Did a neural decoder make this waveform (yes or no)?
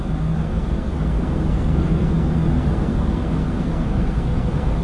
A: yes